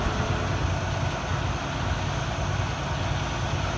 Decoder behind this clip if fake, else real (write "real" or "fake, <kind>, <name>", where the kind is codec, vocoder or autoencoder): real